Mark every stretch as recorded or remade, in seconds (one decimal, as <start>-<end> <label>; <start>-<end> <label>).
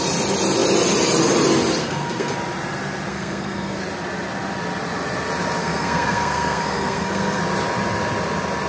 0.0-1.8 recorded; 1.8-2.3 remade; 2.3-3.1 recorded; 3.1-3.8 remade; 3.8-5.6 recorded; 5.6-7.4 remade; 7.4-8.7 recorded